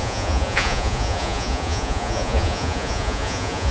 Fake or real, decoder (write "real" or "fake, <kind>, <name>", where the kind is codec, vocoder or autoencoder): fake, vocoder, Vocos